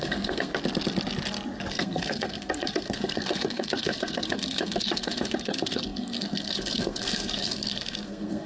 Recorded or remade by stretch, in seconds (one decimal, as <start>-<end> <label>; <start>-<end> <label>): 0.0-0.5 remade; 0.5-1.7 recorded; 1.7-8.5 remade